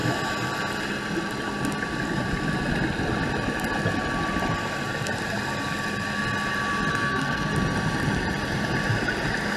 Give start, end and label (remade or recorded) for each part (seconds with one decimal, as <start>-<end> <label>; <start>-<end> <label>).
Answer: 0.0-6.9 recorded; 6.9-7.5 remade; 7.5-9.6 recorded